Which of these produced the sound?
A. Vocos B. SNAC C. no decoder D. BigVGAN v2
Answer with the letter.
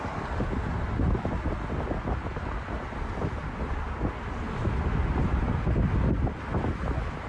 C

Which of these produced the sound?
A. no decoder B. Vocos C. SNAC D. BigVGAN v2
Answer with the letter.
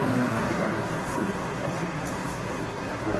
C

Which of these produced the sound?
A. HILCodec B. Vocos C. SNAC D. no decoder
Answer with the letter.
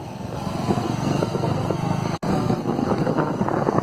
C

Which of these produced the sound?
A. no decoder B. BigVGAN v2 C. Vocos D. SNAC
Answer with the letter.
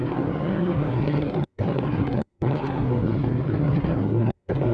D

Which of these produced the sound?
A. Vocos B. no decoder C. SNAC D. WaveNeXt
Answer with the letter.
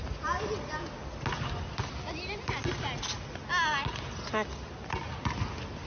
B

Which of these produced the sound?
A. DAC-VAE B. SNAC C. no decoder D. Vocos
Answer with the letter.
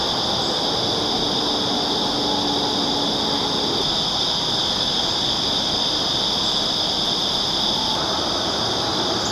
C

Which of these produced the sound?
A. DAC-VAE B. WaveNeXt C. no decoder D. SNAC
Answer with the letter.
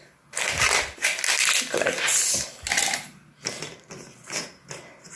C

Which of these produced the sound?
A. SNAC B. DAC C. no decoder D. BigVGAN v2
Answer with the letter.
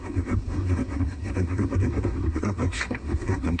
A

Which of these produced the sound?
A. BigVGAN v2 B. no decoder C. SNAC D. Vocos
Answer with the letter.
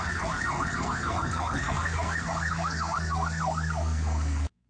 C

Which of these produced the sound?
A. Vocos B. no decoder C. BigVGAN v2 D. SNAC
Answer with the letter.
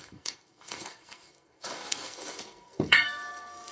D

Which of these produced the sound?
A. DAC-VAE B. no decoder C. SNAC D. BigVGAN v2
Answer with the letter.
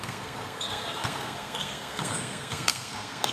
C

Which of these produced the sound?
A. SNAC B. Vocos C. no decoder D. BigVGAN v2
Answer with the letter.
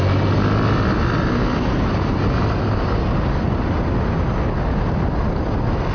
C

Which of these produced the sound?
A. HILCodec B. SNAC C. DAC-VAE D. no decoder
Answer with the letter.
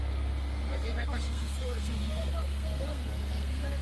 B